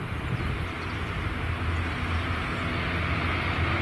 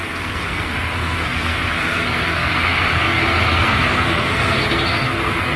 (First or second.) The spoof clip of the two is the second